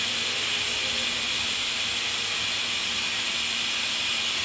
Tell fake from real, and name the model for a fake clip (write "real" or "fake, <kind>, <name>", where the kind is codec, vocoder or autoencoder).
real